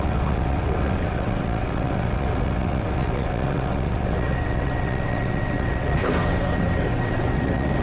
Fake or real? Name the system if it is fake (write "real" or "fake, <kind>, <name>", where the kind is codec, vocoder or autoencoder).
fake, vocoder, WaveNeXt